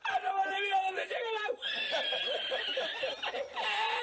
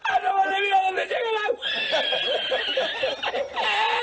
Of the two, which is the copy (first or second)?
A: first